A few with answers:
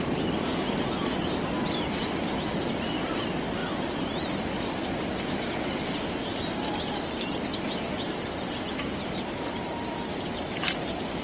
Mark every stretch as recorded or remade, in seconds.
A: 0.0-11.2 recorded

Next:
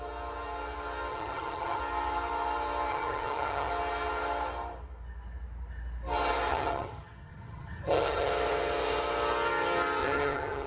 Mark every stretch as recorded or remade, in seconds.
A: 0.0-1.1 recorded; 1.1-1.8 remade; 1.8-2.9 recorded; 2.9-3.7 remade; 3.7-6.5 recorded; 6.5-8.3 remade; 8.3-10.0 recorded; 10.0-10.7 remade

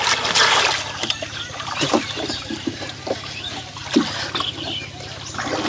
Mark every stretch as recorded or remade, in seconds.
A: 0.0-1.0 recorded; 1.0-3.7 remade; 3.7-5.7 recorded

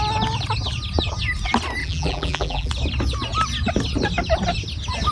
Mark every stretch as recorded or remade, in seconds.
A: 0.0-1.8 recorded; 1.8-2.7 remade; 2.7-5.1 recorded

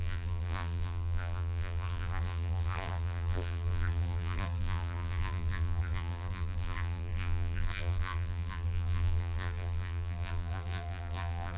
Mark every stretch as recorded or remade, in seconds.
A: 0.0-11.6 remade

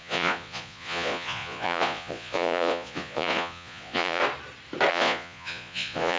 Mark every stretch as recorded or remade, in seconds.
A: 0.0-4.2 remade; 4.2-4.9 recorded; 4.9-6.2 remade

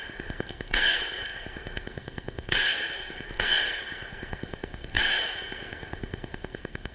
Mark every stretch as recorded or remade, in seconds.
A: 0.0-6.9 remade

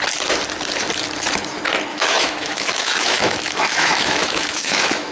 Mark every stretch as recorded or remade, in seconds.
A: 0.0-1.9 recorded; 1.9-5.1 remade